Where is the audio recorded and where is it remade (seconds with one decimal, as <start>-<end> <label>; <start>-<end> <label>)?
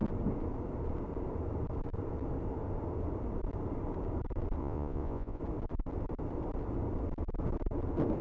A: 0.0-4.6 recorded; 4.6-5.4 remade; 5.4-8.2 recorded